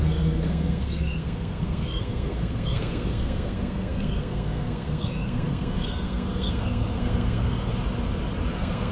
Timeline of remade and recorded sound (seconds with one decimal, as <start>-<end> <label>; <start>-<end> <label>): 0.0-7.7 remade; 7.7-8.5 recorded; 8.5-8.9 remade